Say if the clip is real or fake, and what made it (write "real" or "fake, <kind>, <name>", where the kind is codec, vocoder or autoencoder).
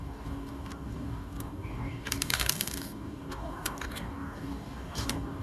fake, codec, DAC